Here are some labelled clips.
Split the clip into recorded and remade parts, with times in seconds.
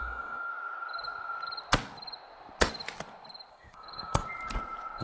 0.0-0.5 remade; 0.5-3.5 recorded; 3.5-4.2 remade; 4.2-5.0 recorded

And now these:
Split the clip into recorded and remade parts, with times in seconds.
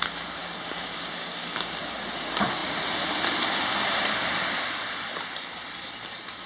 0.0-0.4 recorded; 0.4-1.8 remade; 1.8-6.5 recorded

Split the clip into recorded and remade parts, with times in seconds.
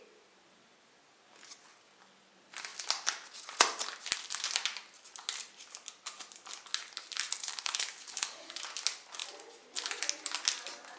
0.0-7.5 recorded; 7.5-8.6 remade; 8.6-11.0 recorded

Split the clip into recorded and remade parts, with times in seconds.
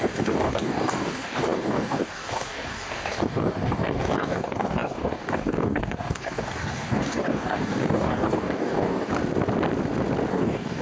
0.0-9.1 remade; 9.1-10.3 recorded; 10.3-10.8 remade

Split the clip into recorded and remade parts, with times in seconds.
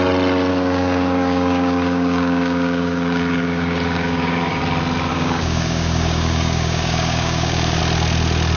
0.0-0.5 recorded; 0.5-4.6 remade; 4.6-5.1 recorded; 5.1-7.8 remade; 7.8-8.6 recorded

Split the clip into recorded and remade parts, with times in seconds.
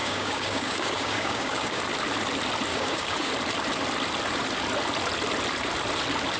0.0-1.8 remade; 1.8-2.7 recorded; 2.7-3.3 remade; 3.3-6.4 recorded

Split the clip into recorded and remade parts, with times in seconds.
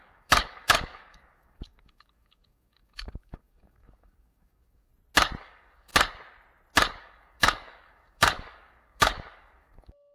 0.0-4.9 remade; 4.9-5.4 recorded; 5.4-5.9 remade; 5.9-7.0 recorded; 7.0-10.1 remade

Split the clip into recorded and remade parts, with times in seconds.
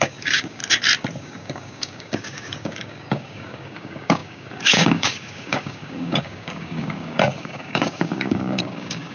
0.0-0.6 remade; 0.6-1.2 recorded; 1.2-9.1 remade